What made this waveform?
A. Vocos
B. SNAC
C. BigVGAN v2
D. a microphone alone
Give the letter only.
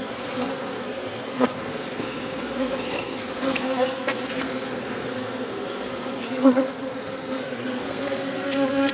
B